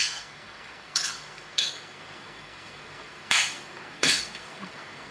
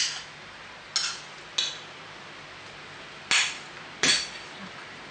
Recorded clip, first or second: second